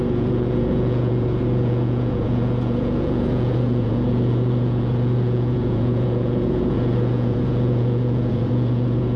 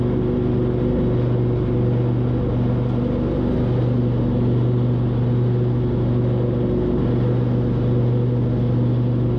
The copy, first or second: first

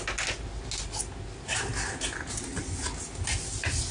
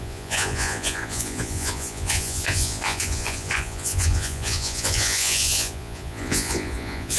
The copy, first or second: second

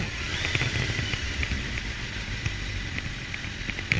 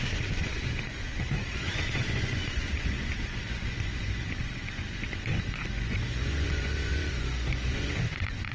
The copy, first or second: second